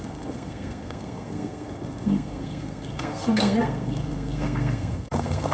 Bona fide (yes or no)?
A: no